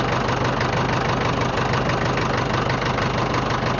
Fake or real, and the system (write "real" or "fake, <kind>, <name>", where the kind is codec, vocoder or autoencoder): real